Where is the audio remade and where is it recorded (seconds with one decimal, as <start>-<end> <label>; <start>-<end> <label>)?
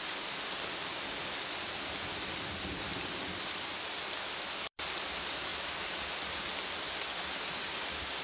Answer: 0.0-2.9 recorded; 2.9-4.4 remade; 4.4-8.2 recorded